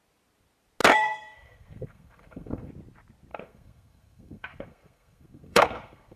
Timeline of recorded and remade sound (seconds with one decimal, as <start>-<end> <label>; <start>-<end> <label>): 0.0-0.8 recorded; 0.8-2.7 remade; 2.7-3.3 recorded; 3.3-6.2 remade

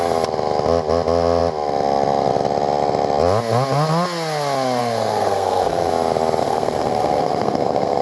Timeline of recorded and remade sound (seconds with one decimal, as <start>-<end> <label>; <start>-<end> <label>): 0.0-4.8 recorded; 4.8-5.9 remade; 5.9-6.4 recorded; 6.4-8.0 remade

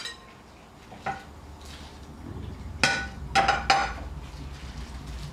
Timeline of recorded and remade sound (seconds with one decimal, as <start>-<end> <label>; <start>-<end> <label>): 0.0-5.3 recorded

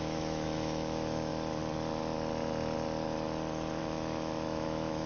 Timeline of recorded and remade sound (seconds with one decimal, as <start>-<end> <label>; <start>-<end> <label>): 0.0-1.3 remade; 1.3-3.8 recorded; 3.8-5.1 remade

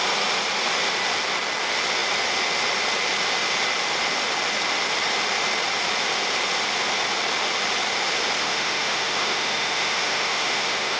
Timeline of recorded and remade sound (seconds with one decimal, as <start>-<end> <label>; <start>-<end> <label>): 0.0-8.4 recorded; 8.4-11.0 remade